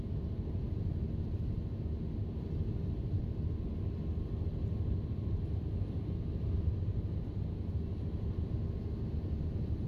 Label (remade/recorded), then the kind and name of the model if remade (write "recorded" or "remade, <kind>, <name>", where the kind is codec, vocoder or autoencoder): recorded